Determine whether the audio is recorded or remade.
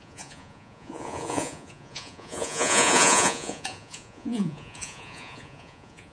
remade